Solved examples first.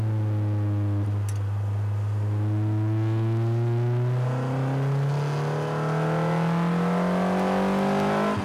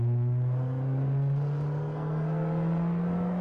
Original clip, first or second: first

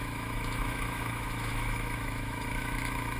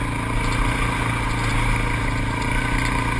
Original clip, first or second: second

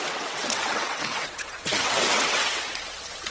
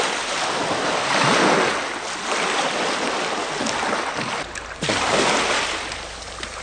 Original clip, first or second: second